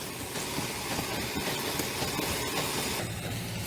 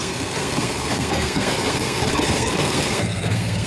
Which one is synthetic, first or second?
second